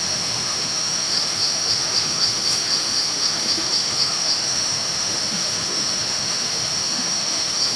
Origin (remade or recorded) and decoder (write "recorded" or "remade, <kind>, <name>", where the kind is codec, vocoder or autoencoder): remade, autoencoder, DAC-VAE